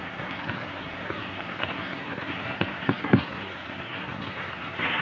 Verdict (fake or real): fake